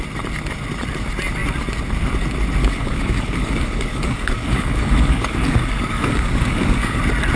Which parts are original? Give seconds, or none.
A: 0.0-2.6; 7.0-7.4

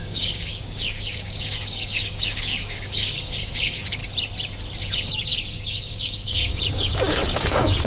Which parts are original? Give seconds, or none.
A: 4.0-4.8